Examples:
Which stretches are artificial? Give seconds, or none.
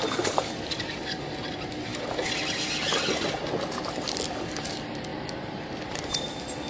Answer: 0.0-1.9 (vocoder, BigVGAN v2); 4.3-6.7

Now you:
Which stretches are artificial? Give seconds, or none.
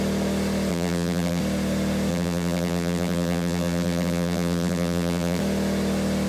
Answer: 0.7-1.4 (vocoder, BigVGAN v2); 2.1-5.4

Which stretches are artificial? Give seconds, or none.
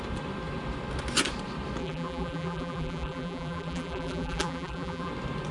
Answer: 1.8-5.1 (vocoder, BigVGAN v2)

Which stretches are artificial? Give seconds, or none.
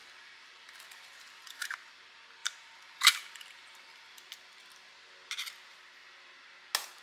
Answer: 0.0-1.7 (vocoder, BigVGAN v2); 2.4-4.3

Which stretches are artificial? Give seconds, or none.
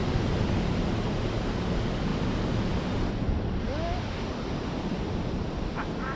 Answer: none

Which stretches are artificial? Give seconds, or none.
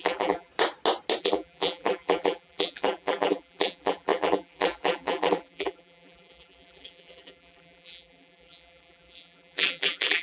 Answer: 0.0-0.5 (vocoder, BigVGAN v2); 1.2-10.2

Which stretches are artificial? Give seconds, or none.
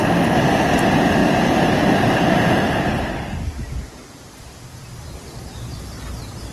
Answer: 1.2-2.6 (vocoder, BigVGAN v2); 4.0-6.5